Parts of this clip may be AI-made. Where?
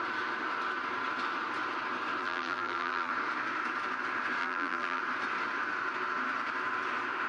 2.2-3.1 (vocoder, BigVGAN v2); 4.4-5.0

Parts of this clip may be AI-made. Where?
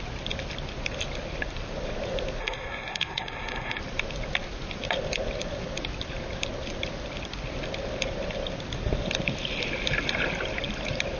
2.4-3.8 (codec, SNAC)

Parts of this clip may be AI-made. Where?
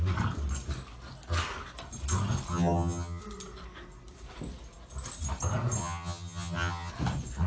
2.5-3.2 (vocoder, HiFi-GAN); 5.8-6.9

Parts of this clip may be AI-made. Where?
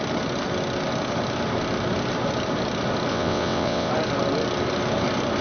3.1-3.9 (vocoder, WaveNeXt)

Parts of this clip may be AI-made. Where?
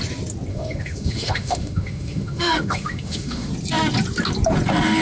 0.5-3.5 (autoencoder, DAC-VAE)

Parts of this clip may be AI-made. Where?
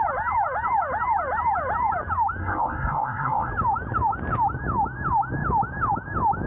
2.4-3.5 (codec, SNAC)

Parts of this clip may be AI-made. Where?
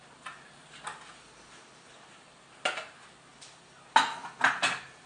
none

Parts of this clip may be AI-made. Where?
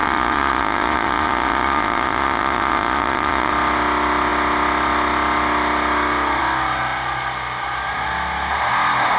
0.0-3.5 (vocoder, Vocos)